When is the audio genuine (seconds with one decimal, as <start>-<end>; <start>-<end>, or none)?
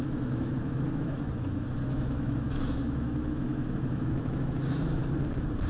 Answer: 5.0-5.7